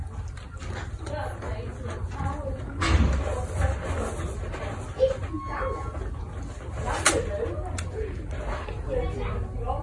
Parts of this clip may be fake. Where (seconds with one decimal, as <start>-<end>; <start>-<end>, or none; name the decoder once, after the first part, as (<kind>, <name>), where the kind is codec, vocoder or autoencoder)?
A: none